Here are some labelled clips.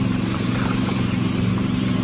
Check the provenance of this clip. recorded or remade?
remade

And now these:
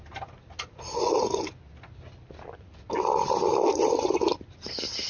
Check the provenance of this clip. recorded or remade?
recorded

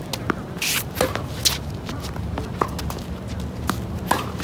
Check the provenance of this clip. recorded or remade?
recorded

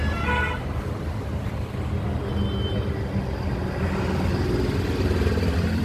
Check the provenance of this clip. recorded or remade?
recorded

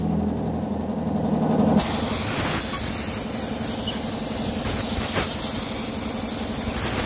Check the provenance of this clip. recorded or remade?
recorded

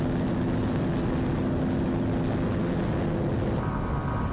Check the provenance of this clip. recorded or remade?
recorded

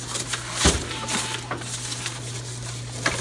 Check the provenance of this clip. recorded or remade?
recorded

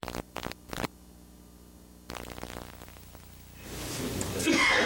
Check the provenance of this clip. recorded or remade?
remade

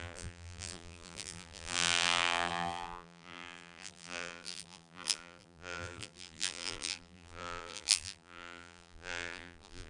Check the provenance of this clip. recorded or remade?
remade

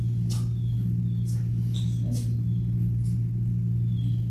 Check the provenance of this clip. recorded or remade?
recorded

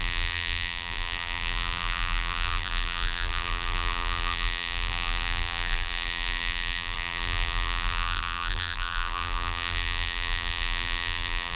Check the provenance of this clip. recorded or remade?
remade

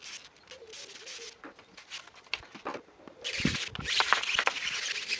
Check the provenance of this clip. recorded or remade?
recorded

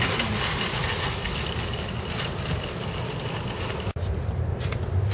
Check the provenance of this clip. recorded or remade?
recorded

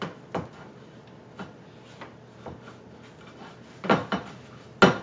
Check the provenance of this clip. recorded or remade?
recorded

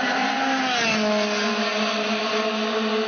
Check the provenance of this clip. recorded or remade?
recorded